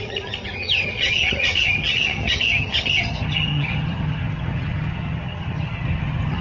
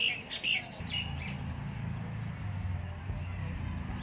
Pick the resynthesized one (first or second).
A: first